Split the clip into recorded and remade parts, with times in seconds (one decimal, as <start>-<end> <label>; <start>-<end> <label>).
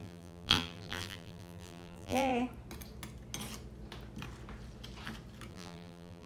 0.0-2.3 remade; 2.3-5.5 recorded; 5.5-6.3 remade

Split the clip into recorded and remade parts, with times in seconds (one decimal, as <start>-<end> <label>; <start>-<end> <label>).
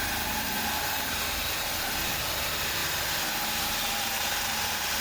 0.0-2.8 remade; 2.8-4.0 recorded; 4.0-5.0 remade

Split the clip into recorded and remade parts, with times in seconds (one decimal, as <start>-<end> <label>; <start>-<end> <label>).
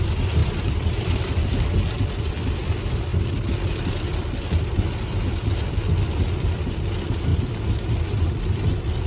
0.0-0.4 recorded; 0.4-1.5 remade; 1.5-3.1 recorded; 3.1-4.6 remade; 4.6-9.1 recorded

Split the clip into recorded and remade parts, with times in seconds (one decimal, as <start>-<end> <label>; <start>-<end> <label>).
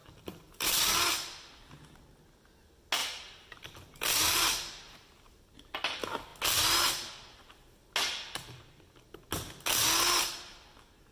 0.0-0.8 remade; 0.8-3.0 recorded; 3.0-5.4 remade; 5.4-11.1 recorded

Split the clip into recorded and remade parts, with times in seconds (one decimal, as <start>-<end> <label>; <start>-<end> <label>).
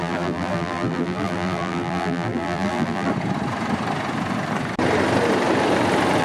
0.0-3.1 remade; 3.1-6.2 recorded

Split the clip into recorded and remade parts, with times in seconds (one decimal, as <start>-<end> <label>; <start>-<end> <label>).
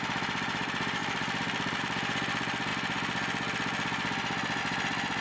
0.0-1.0 recorded; 1.0-1.8 remade; 1.8-5.2 recorded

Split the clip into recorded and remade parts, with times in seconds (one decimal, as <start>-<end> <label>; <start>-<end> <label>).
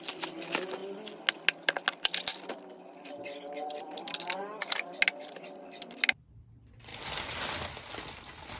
0.0-6.9 recorded; 6.9-7.7 remade; 7.7-8.6 recorded